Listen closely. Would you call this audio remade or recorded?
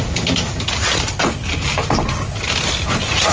recorded